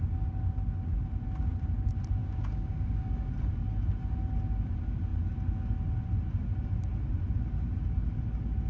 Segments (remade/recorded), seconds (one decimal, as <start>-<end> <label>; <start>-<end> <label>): 0.0-2.2 recorded; 2.2-3.3 remade; 3.3-8.7 recorded